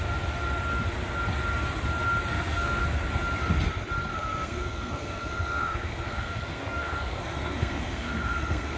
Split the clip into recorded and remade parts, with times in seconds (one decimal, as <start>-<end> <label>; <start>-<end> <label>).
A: 0.0-2.3 recorded; 2.3-2.8 remade; 2.8-4.1 recorded; 4.1-8.8 remade

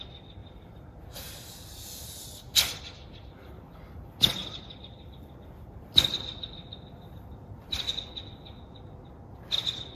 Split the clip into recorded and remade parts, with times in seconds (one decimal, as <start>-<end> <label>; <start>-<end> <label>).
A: 0.0-0.4 recorded; 0.4-2.8 remade; 2.8-4.4 recorded; 4.4-7.9 remade; 7.9-9.9 recorded

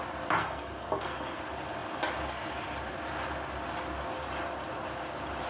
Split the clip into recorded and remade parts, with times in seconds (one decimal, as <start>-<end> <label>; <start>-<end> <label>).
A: 0.0-0.4 recorded; 0.4-1.4 remade; 1.4-5.5 recorded

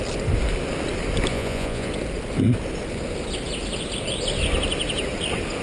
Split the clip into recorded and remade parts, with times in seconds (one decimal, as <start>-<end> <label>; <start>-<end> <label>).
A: 0.0-1.3 recorded; 1.3-1.9 remade; 1.9-5.6 recorded

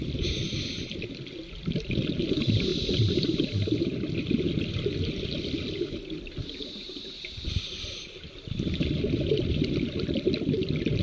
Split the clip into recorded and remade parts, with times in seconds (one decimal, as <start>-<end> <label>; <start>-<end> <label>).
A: 0.0-11.0 recorded